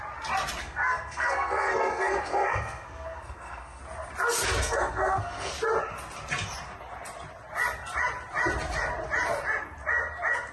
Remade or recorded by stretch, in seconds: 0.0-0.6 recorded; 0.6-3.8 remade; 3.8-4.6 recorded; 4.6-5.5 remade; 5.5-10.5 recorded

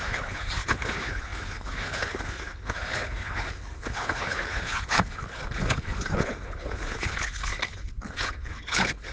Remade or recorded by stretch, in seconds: 0.0-9.1 remade

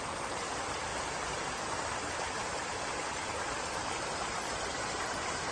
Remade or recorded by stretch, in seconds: 0.0-5.5 remade

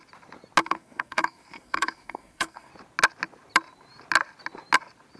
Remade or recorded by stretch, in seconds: 0.0-0.6 recorded; 0.6-2.7 remade; 2.7-5.2 recorded

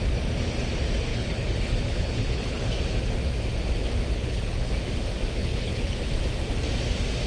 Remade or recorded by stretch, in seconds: 0.0-1.1 recorded; 1.1-2.8 remade; 2.8-4.1 recorded; 4.1-4.7 remade; 4.7-5.4 recorded; 5.4-6.0 remade; 6.0-7.3 recorded

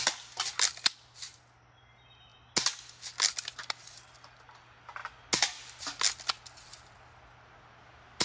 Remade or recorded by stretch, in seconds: 0.0-8.2 recorded